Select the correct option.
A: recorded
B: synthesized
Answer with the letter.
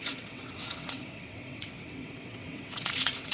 B